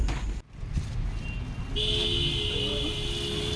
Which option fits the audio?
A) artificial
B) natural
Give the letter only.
B